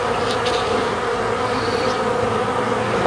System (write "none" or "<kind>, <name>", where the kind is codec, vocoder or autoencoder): none